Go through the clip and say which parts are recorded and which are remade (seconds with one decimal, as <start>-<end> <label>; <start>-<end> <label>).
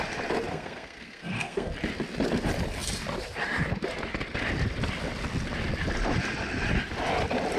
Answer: 0.0-0.5 recorded; 0.5-1.7 remade; 1.7-7.6 recorded